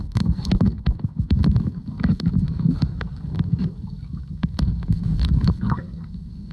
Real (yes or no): no